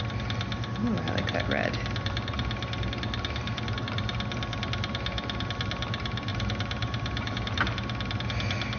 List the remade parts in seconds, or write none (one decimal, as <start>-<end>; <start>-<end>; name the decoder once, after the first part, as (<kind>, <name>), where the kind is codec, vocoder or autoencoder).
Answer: 6.3-7.6 (vocoder, BigVGAN v2)

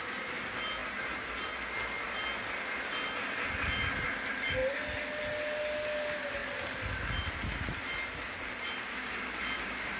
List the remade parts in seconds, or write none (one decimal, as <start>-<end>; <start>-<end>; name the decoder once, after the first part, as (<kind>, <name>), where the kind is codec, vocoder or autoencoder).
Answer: none

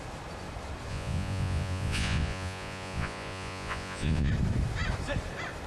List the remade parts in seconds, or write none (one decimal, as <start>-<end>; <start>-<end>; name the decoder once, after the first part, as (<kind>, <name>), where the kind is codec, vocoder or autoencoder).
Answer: 0.9-4.3 (vocoder, Vocos)